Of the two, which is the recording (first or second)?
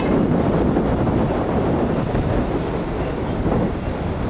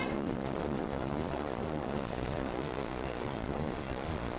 first